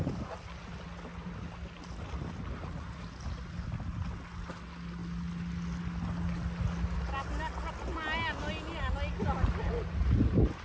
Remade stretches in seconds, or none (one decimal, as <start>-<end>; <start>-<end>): none